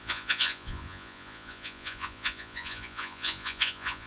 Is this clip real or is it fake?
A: fake